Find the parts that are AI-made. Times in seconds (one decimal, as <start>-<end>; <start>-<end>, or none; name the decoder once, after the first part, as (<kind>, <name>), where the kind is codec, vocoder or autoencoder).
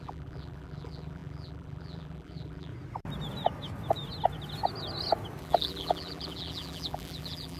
0.0-2.7 (vocoder, BigVGAN v2); 5.4-7.6